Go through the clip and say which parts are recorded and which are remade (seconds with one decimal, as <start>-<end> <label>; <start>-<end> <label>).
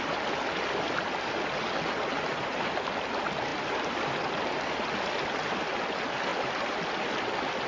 0.0-3.5 recorded; 3.5-4.7 remade; 4.7-6.3 recorded; 6.3-6.9 remade; 6.9-7.7 recorded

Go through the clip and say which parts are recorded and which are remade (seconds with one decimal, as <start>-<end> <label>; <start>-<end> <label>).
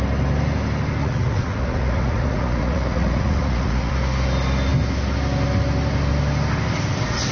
0.0-1.0 recorded; 1.0-3.9 remade; 3.9-7.3 recorded